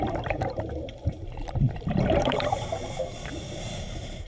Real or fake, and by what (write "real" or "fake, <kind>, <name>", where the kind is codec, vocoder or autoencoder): fake, vocoder, BigVGAN v2